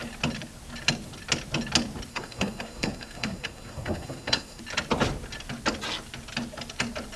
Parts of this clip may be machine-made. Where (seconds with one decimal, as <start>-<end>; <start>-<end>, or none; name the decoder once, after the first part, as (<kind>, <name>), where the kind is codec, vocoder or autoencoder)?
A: 2.1-4.6 (codec, SNAC)